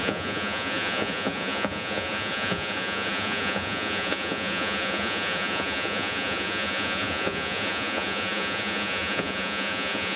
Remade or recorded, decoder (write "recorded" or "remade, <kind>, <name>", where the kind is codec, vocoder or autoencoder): remade, vocoder, Vocos